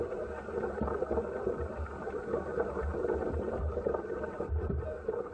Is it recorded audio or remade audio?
recorded